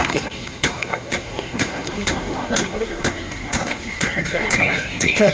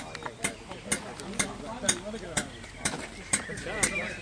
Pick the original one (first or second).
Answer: second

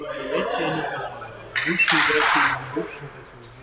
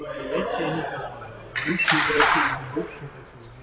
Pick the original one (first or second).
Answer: first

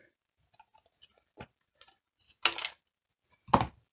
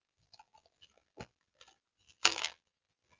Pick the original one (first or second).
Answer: first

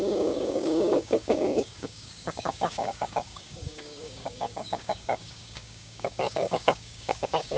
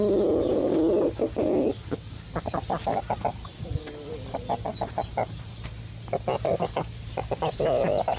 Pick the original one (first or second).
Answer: second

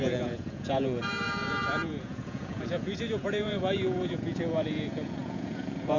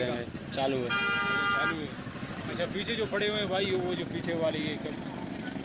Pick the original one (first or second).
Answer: second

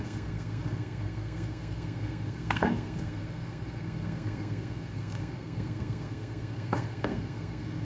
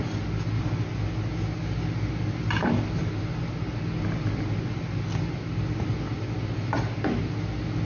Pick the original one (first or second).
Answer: second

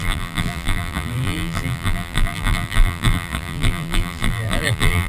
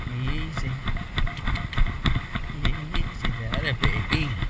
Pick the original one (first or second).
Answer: second